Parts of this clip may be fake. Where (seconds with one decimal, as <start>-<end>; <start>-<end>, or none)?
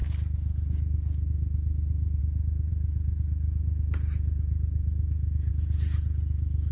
none